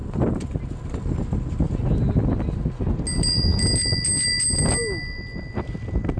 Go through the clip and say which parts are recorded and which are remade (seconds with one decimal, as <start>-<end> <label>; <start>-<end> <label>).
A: 0.0-6.2 recorded